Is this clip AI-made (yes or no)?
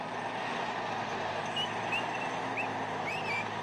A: no